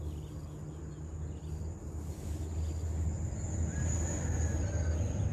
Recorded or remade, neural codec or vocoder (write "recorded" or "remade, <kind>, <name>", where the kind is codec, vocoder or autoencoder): recorded